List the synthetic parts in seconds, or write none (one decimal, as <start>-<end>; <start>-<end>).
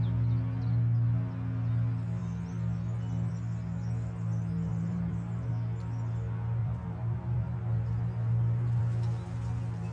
4.7-5.5; 6.6-8.8